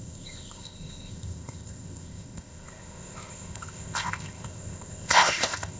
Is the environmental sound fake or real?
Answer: fake